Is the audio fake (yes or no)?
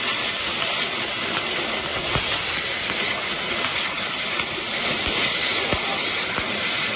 no